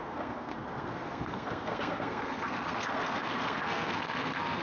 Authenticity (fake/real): fake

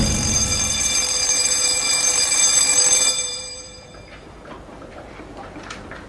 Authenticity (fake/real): fake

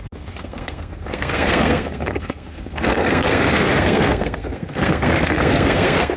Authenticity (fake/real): fake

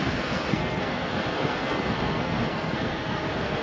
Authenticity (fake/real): fake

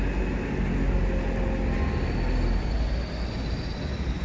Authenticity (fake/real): real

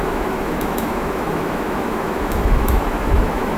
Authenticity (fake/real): fake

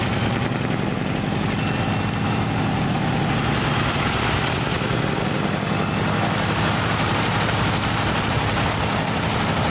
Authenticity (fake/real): real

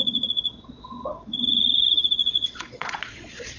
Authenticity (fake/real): fake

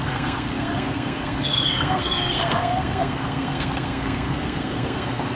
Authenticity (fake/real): fake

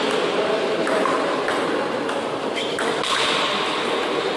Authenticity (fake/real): real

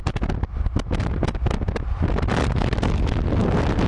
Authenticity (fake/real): real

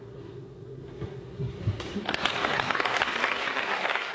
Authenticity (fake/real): fake